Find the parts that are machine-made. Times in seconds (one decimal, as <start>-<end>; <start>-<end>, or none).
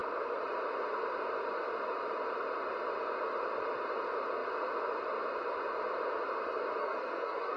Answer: 6.8-7.6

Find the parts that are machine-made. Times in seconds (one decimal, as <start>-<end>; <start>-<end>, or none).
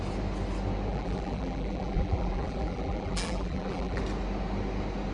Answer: 0.9-4.0